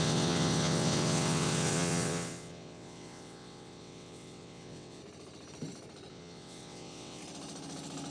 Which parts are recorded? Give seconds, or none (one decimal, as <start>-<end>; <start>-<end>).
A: 5.0-6.1; 7.2-8.1